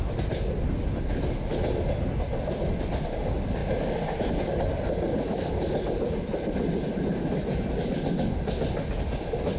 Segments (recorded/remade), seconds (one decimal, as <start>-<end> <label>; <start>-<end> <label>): 0.0-9.6 recorded